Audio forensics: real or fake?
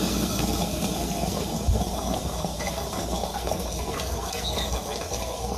fake